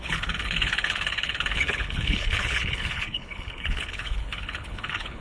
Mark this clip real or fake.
fake